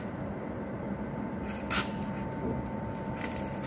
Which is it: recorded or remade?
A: recorded